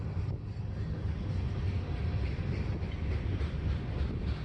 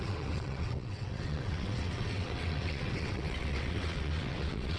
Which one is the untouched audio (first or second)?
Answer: first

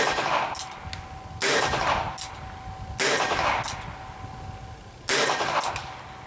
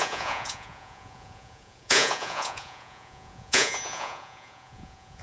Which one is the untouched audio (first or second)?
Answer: first